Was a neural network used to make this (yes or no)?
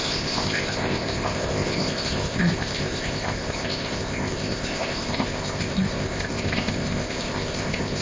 yes